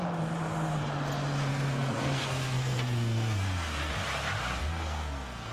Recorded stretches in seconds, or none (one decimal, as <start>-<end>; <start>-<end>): 0.0-1.5; 3.9-4.6